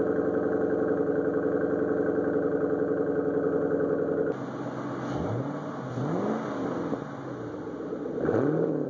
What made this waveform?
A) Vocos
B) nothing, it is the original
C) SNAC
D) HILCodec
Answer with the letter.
B